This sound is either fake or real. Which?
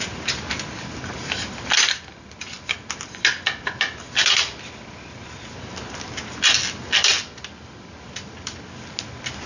real